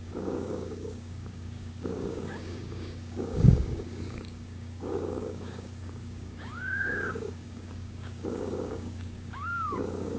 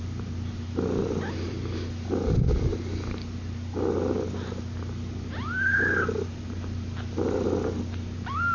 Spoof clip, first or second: first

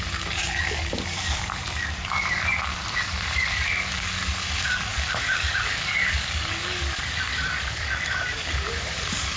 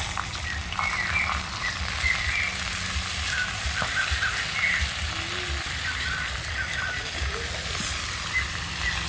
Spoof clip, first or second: first